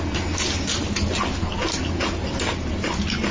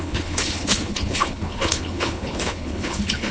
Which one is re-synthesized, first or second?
second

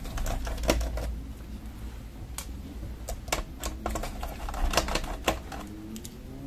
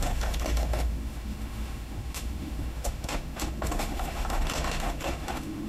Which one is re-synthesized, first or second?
second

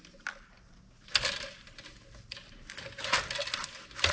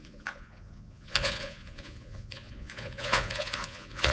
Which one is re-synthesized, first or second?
second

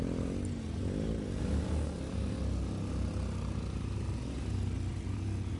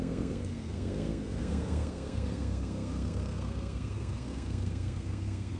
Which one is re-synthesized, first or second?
second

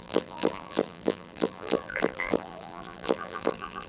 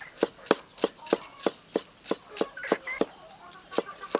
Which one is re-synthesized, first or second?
first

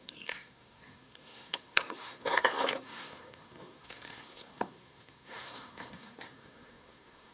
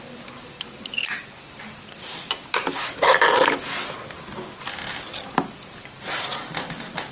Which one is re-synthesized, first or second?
first